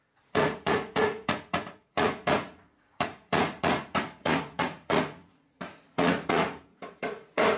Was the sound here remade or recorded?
remade